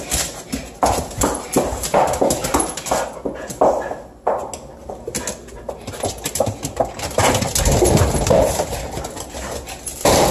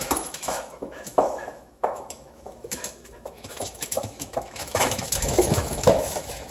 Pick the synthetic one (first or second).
second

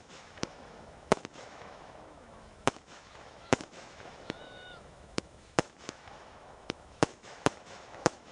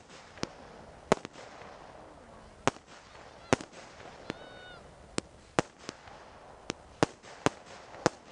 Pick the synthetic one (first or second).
first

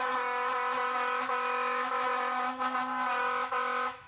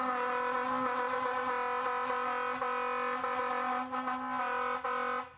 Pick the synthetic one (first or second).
first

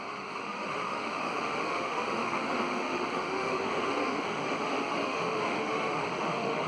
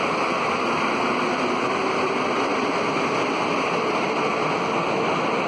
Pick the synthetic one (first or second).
first